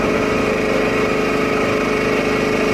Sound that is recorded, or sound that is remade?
recorded